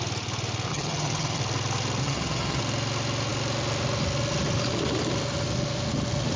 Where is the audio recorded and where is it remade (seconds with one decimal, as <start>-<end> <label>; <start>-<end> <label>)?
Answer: 0.0-0.7 recorded; 0.7-1.4 remade; 1.4-2.0 recorded; 2.0-2.6 remade; 2.6-6.4 recorded